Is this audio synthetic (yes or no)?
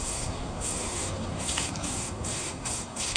yes